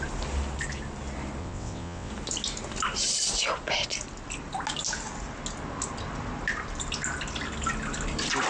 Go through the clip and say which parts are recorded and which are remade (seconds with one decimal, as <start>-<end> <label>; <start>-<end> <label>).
0.0-1.4 recorded; 1.4-2.1 remade; 2.1-8.5 recorded